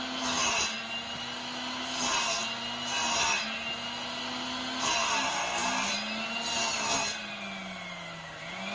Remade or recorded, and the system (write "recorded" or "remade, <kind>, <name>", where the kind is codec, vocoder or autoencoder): recorded